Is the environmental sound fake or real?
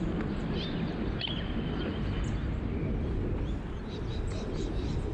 real